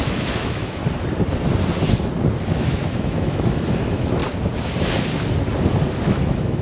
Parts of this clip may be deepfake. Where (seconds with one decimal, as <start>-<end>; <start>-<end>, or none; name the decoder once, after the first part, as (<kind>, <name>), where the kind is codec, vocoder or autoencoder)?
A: 0.0-0.8 (autoencoder, DAC-VAE); 2.5-4.2; 5.9-6.6